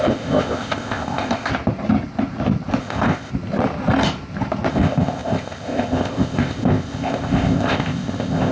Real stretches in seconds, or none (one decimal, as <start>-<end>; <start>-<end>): 1.5-2.8; 3.3-4.7